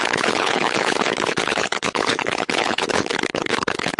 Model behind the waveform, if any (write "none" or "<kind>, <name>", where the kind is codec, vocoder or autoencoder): codec, HILCodec